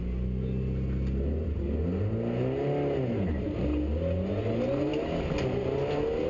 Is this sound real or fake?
real